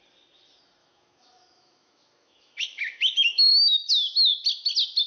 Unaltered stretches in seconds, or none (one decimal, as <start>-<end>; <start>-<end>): 0.0-0.8; 3.9-5.1